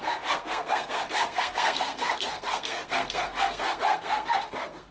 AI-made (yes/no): yes